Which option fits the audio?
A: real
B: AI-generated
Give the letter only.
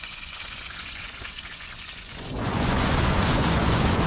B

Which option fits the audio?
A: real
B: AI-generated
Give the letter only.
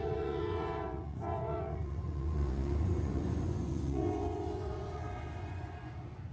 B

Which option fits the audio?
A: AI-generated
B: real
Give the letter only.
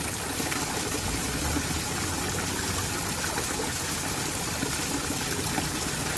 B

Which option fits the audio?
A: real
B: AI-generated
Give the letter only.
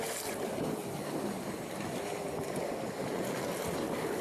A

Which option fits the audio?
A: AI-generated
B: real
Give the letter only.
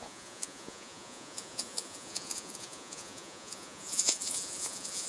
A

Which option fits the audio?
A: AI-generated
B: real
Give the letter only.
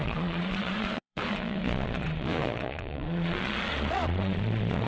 A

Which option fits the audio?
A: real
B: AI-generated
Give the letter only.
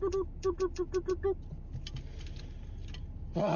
A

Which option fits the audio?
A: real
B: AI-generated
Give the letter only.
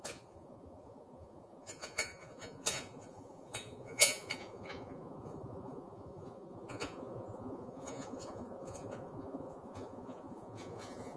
B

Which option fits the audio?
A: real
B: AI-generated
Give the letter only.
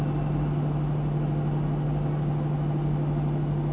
A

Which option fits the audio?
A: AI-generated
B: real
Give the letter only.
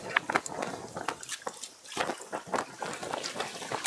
B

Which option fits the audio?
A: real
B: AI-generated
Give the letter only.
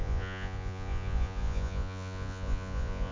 B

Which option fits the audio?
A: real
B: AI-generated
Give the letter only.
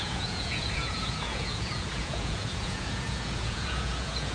B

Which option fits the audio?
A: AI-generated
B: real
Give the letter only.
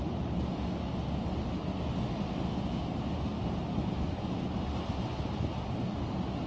B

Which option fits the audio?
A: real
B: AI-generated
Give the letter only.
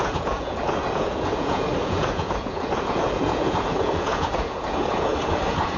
B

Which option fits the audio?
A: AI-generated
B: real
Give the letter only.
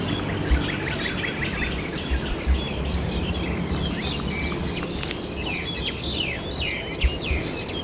B